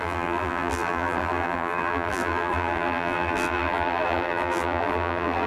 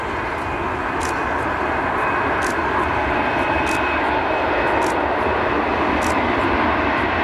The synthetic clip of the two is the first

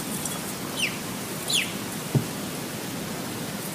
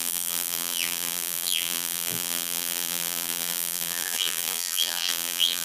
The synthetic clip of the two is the second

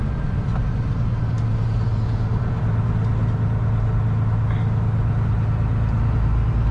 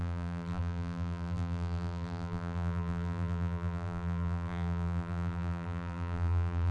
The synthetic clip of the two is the second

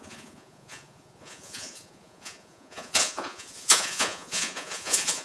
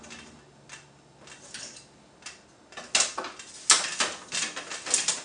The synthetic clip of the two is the first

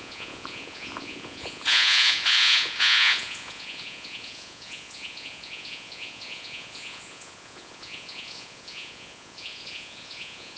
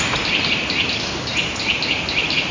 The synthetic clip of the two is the first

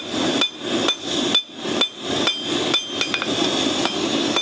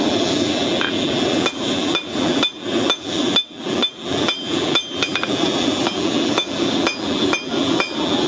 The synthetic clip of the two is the second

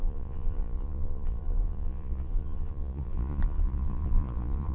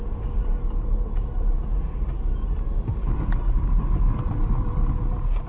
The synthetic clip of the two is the first